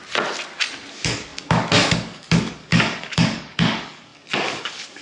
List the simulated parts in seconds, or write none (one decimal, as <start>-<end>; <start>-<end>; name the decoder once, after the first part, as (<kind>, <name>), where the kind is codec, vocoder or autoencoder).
0.9-5.0 (codec, DAC)